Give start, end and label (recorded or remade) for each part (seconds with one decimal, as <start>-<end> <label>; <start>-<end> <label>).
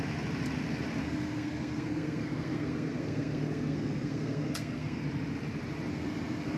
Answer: 0.0-1.0 recorded; 1.0-5.0 remade; 5.0-5.9 recorded; 5.9-6.6 remade